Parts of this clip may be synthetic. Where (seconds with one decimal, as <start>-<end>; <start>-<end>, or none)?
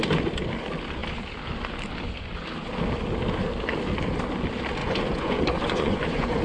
4.8-6.4